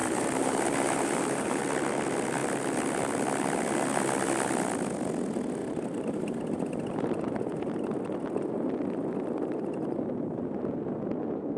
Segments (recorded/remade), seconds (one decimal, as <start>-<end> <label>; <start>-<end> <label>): 0.0-1.6 remade; 1.6-5.6 recorded; 5.6-8.0 remade; 8.0-11.6 recorded